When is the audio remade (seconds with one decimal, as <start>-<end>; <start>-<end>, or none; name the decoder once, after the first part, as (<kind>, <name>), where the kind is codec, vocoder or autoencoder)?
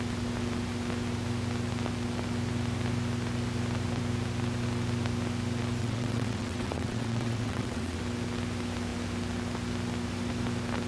5.8-8.0 (vocoder, WaveNeXt)